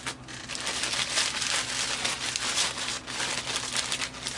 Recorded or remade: recorded